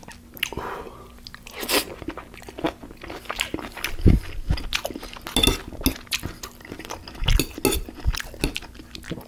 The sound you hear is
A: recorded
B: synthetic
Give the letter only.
A